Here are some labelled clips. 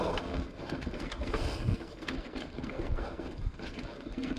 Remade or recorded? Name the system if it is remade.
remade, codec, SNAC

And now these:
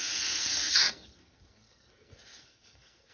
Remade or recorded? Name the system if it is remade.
remade, codec, SNAC